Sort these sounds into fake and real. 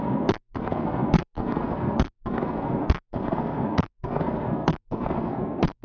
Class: fake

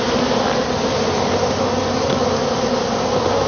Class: real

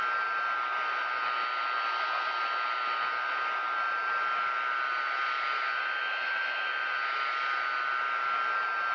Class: real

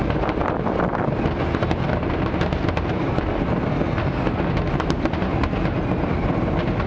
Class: real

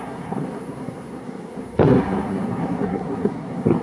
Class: fake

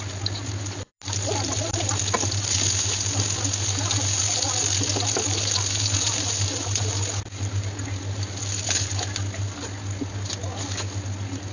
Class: real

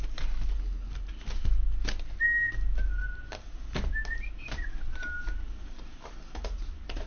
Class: real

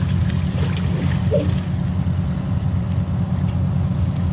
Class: real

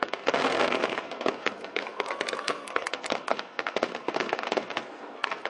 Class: fake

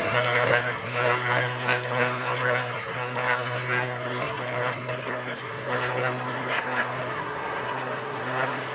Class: fake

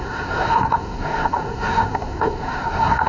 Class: fake